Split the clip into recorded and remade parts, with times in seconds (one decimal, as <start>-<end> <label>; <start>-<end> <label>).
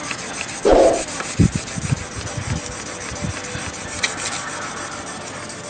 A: 0.0-5.7 recorded